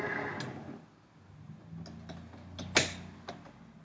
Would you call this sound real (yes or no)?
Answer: yes